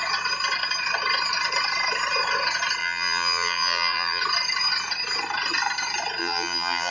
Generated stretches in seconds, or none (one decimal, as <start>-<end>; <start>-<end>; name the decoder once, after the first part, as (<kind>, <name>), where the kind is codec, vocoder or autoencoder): 2.8-4.2 (vocoder, BigVGAN v2); 6.2-6.9